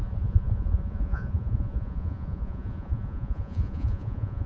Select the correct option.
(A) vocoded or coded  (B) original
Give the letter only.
A